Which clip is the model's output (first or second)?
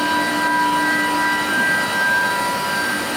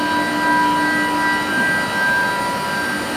first